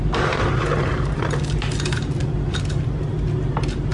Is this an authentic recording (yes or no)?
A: yes